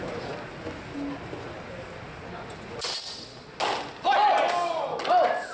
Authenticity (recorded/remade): recorded